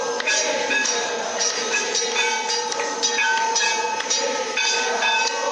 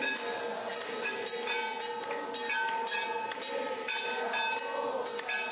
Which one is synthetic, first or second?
first